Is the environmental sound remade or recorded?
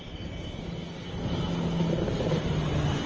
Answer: recorded